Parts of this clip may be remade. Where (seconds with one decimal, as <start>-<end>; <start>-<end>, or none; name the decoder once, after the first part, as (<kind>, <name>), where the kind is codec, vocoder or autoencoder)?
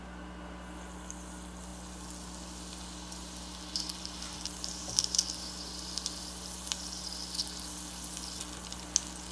none